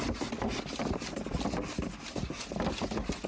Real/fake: real